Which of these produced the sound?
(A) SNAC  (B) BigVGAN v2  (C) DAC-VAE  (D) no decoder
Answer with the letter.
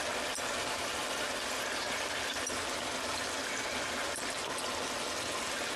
D